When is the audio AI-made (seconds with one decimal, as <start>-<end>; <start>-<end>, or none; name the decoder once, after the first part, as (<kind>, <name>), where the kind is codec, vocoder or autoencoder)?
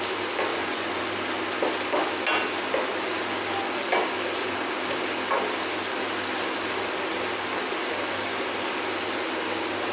0.5-1.0 (vocoder, Vocos)